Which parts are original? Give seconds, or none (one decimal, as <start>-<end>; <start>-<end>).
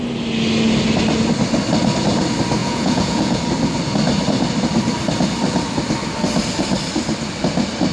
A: 0.0-2.6; 3.4-7.9